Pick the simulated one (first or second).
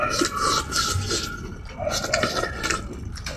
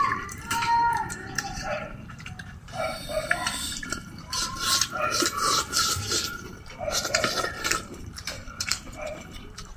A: second